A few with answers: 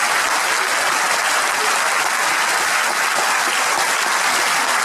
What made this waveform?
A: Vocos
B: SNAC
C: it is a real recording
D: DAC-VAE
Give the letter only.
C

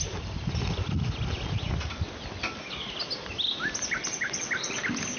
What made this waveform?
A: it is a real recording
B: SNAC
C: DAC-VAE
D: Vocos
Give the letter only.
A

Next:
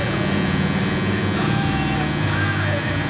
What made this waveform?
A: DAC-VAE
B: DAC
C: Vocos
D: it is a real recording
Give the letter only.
D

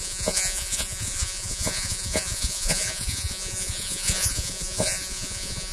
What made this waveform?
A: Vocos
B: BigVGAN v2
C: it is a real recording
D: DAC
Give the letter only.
A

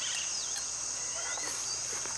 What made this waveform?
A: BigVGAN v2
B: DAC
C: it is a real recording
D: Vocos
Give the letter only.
C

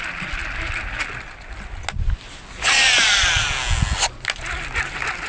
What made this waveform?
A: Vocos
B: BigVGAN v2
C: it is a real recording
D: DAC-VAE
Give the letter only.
C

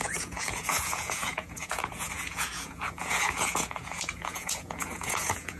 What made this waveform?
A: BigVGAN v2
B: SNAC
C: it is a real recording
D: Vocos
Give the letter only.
D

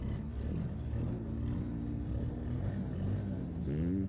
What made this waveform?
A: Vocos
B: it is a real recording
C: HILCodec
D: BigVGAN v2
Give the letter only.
B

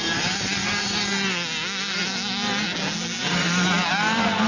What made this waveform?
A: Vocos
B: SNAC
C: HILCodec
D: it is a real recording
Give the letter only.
D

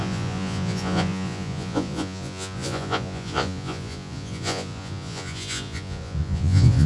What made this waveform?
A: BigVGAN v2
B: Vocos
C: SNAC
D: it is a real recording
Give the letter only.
B